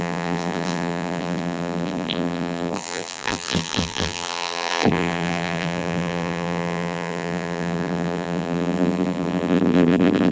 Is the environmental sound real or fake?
fake